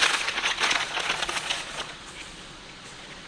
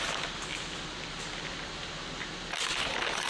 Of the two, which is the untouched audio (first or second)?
second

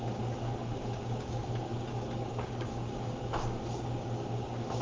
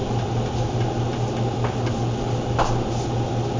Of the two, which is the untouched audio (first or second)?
second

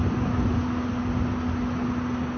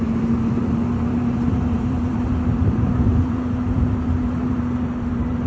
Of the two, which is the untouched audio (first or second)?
first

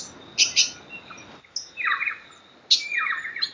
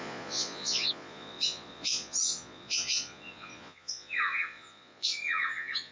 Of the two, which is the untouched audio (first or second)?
first